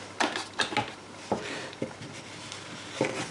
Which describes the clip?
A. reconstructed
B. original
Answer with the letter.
B